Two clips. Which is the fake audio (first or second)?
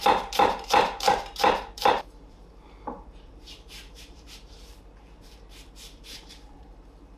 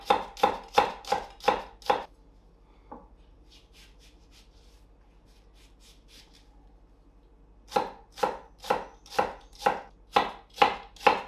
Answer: first